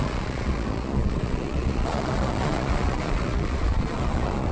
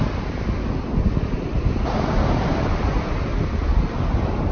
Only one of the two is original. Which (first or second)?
second